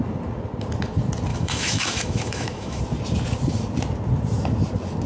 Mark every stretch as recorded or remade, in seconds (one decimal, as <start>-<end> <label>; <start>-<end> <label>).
0.0-1.3 recorded; 1.3-2.8 remade; 2.8-5.1 recorded